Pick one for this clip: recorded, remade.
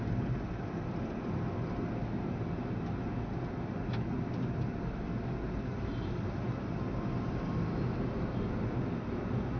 recorded